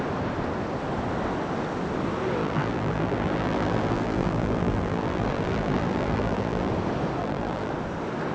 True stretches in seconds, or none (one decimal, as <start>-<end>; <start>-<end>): 0.0-2.4; 6.7-7.2; 7.7-8.3